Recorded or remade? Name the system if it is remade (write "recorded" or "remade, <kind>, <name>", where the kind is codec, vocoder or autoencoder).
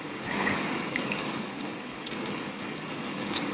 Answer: remade, codec, DAC